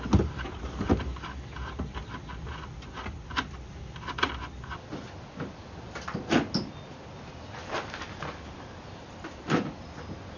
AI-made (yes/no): no